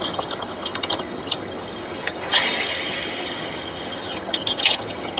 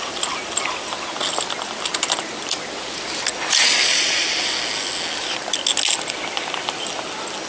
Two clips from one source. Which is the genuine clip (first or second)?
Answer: second